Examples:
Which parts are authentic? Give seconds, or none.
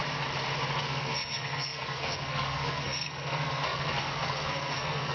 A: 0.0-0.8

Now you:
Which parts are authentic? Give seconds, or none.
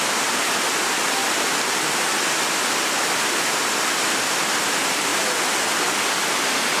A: 0.0-6.8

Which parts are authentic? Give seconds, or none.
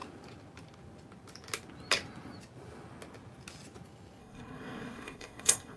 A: 0.0-4.2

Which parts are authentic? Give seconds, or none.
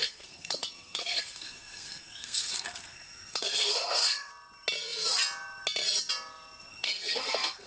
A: 4.3-6.7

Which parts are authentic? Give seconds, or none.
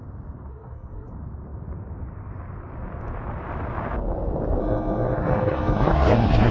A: 0.0-0.5; 1.1-4.6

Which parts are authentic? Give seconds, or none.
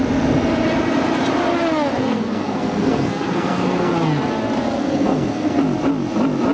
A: 0.0-2.0; 3.9-4.8; 5.6-6.5